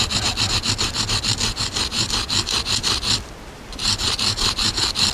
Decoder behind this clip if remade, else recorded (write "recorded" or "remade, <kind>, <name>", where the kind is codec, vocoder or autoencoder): recorded